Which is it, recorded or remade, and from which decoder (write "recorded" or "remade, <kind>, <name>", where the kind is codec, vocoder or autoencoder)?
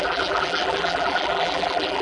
remade, vocoder, BigVGAN v2